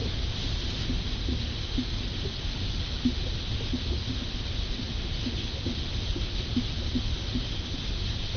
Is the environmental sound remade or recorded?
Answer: recorded